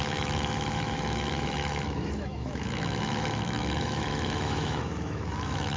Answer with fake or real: fake